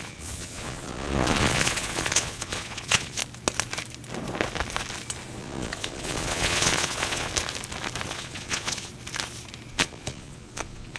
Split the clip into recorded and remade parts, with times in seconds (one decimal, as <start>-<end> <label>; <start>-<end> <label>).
0.0-3.2 remade; 3.2-5.4 recorded; 5.4-7.3 remade; 7.3-8.1 recorded; 8.1-8.9 remade; 8.9-9.7 recorded; 9.7-11.0 remade